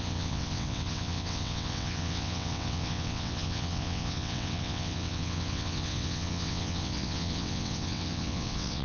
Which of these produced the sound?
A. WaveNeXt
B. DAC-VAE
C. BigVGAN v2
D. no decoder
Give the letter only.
A